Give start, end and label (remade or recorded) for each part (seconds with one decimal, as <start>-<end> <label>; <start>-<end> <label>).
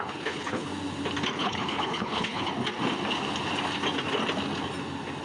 0.0-0.7 remade; 0.7-1.4 recorded; 1.4-2.5 remade; 2.5-5.2 recorded